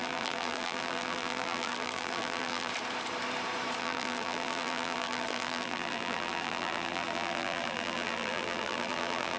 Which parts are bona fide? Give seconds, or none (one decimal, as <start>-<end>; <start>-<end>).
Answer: 2.7-3.8